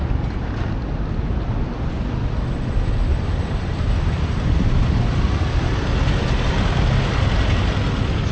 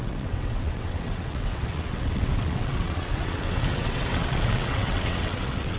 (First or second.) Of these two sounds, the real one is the first